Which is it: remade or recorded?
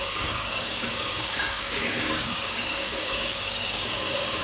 remade